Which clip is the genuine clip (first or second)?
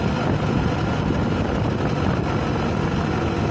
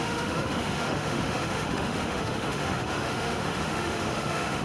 first